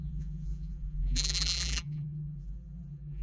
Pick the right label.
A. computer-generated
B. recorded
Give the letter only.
A